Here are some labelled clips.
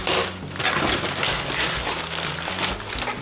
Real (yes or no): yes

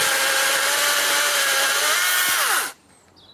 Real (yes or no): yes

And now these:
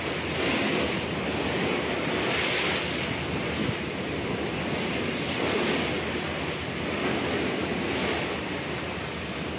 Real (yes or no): yes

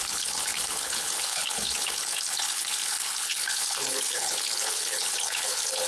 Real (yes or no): no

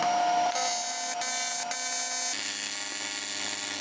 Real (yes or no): yes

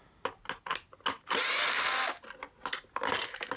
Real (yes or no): yes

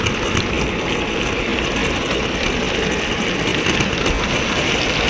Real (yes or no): yes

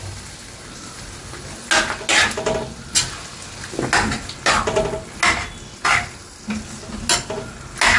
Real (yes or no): yes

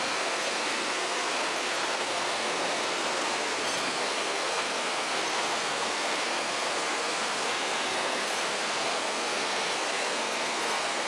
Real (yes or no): no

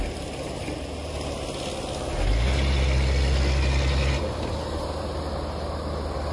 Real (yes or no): yes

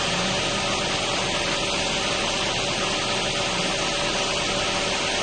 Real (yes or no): yes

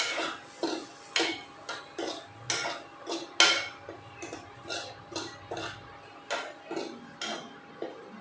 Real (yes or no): yes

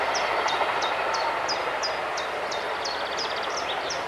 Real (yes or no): yes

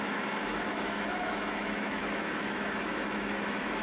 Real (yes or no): no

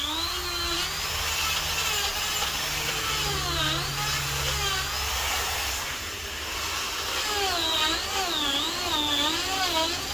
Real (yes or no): yes